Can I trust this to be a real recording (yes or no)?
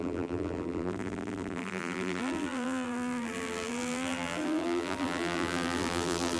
no